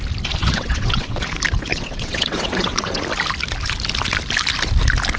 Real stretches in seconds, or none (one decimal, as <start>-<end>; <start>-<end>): 0.0-0.4; 1.2-1.7; 3.0-5.2